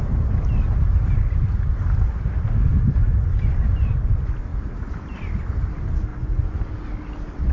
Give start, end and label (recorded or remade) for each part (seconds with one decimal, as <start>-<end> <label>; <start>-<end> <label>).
0.0-6.1 recorded; 6.1-6.6 remade; 6.6-7.5 recorded